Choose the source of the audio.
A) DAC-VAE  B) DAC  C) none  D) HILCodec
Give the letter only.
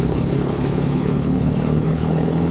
D